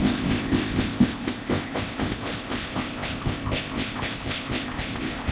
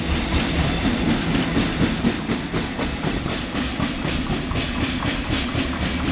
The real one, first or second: second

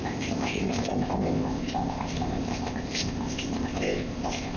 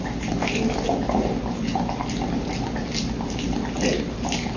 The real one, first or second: second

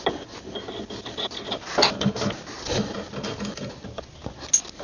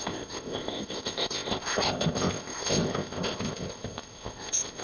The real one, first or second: first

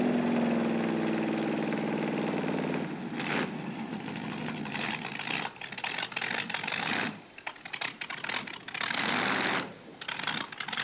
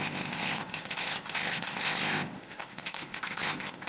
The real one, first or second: first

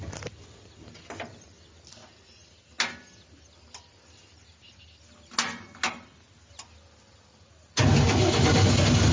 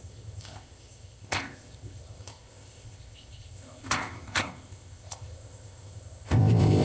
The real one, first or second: first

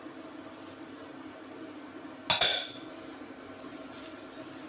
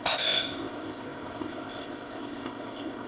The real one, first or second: first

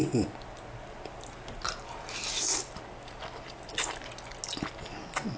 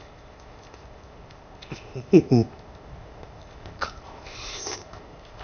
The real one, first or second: first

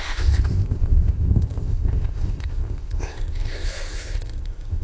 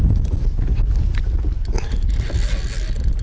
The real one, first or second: second